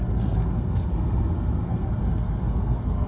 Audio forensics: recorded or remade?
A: remade